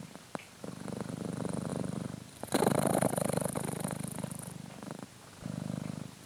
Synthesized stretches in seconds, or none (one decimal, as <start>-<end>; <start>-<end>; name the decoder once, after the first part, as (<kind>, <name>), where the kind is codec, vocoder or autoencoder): 1.7-5.3 (vocoder, BigVGAN v2)

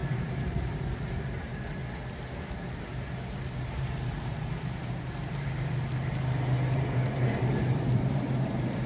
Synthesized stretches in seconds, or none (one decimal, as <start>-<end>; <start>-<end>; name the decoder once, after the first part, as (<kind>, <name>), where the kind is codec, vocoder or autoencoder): 0.0-1.8 (vocoder, BigVGAN v2); 2.5-8.9